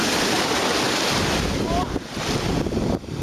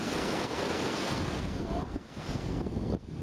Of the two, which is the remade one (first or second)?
second